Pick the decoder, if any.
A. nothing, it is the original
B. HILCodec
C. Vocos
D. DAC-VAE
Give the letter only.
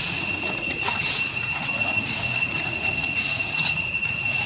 C